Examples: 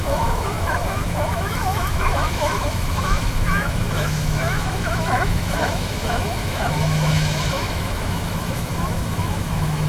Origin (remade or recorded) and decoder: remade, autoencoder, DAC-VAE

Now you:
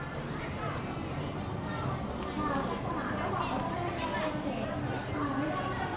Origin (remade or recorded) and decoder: recorded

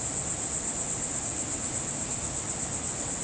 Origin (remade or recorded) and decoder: recorded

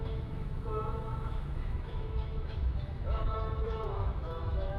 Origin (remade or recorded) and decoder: remade, autoencoder, DAC-VAE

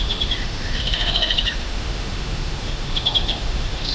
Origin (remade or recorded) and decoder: remade, autoencoder, DAC-VAE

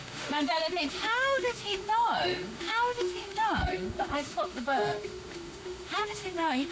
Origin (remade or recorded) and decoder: remade, autoencoder, DAC-VAE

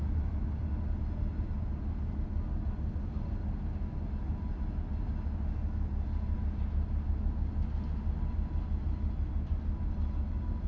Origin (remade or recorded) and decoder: recorded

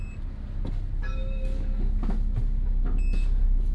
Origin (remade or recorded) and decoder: recorded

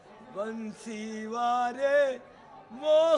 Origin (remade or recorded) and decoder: recorded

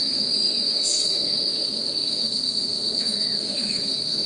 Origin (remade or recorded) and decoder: remade, autoencoder, DAC-VAE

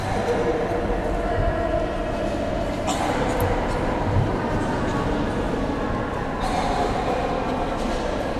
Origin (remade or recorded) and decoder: recorded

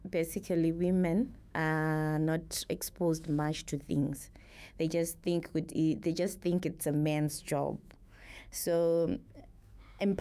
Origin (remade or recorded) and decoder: remade, autoencoder, DAC-VAE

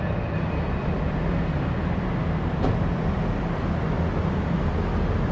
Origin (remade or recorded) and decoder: recorded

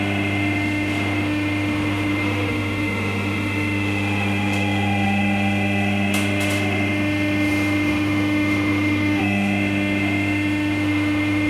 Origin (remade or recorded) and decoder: remade, autoencoder, DAC-VAE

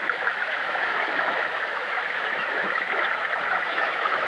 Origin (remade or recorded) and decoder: remade, autoencoder, DAC-VAE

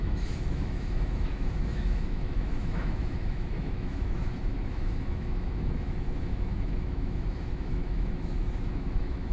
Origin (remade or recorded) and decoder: remade, autoencoder, DAC-VAE